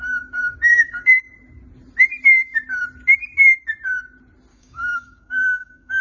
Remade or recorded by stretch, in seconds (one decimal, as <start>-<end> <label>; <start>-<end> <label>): 0.0-0.7 recorded; 0.7-1.2 remade; 1.2-4.5 recorded; 4.5-6.0 remade